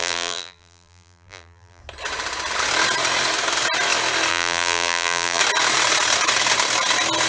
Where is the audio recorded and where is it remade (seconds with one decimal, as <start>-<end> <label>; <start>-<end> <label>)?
0.0-1.8 remade; 1.8-4.3 recorded; 4.3-5.4 remade; 5.4-7.3 recorded

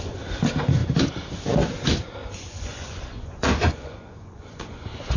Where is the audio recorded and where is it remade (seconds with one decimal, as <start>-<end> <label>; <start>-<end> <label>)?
0.0-2.2 recorded; 2.2-5.2 remade

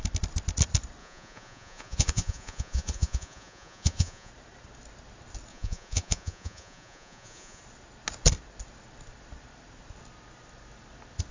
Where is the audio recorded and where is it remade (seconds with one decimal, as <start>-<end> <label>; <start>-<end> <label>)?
0.0-1.0 recorded; 1.0-4.3 remade; 4.3-5.5 recorded; 5.5-7.6 remade; 7.6-11.3 recorded

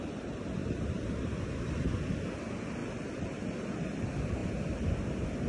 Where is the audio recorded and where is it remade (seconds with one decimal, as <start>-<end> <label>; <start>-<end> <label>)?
0.0-0.6 recorded; 0.6-1.6 remade; 1.6-2.8 recorded; 2.8-3.7 remade; 3.7-5.5 recorded

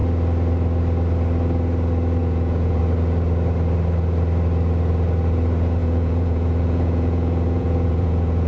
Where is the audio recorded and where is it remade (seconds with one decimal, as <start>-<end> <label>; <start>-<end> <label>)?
0.0-2.2 recorded; 2.2-2.8 remade; 2.8-5.8 recorded; 5.8-8.5 remade

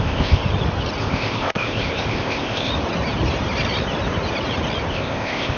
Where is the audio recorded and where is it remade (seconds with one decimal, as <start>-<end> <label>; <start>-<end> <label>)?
0.0-0.4 remade; 0.4-1.0 recorded; 1.0-2.7 remade; 2.7-4.9 recorded; 4.9-5.6 remade